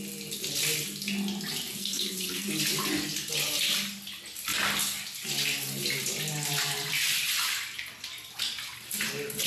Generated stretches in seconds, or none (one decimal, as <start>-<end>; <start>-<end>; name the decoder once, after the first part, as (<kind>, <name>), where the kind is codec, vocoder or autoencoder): 1.7-2.5 (codec, SNAC)

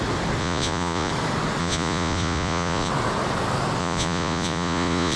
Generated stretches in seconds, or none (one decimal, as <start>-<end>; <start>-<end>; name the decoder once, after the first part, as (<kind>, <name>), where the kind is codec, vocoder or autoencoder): 0.4-1.1 (vocoder, Vocos); 1.6-2.9; 3.8-5.2